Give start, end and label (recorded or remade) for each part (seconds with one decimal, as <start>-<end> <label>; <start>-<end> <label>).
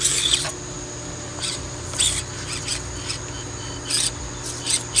0.0-1.3 recorded; 1.3-2.0 remade; 2.0-5.0 recorded